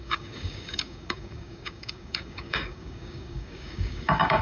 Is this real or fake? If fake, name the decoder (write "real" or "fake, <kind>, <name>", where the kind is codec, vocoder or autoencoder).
fake, codec, DAC